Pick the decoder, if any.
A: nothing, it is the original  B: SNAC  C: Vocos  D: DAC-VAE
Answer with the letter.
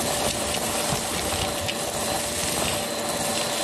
A